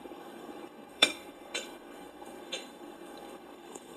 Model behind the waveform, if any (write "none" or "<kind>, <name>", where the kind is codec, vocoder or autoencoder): codec, SNAC